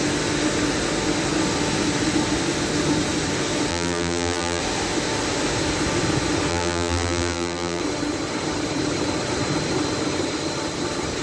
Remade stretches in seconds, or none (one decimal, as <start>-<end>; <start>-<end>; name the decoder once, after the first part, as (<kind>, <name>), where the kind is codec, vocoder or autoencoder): 3.7-4.6 (vocoder, BigVGAN v2); 6.5-7.8